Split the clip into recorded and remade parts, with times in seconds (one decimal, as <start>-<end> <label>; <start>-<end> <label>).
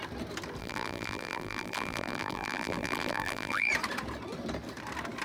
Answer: 0.0-0.6 recorded; 0.6-3.7 remade; 3.7-5.2 recorded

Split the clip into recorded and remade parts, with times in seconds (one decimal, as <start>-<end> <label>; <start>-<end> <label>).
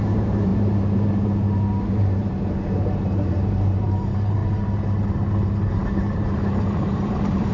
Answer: 0.0-4.4 remade; 4.4-5.7 recorded; 5.7-7.5 remade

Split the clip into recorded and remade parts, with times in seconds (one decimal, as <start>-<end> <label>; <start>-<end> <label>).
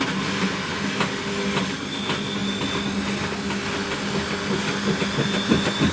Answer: 0.0-5.9 recorded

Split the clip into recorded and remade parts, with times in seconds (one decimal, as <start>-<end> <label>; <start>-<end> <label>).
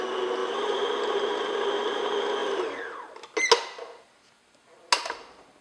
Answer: 0.0-0.4 recorded; 0.4-0.9 remade; 0.9-2.4 recorded; 2.4-3.2 remade; 3.2-5.6 recorded